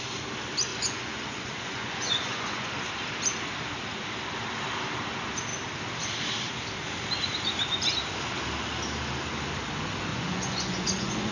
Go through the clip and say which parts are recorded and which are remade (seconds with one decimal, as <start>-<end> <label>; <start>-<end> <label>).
0.0-0.7 recorded; 0.7-2.7 remade; 2.7-10.1 recorded; 10.1-11.3 remade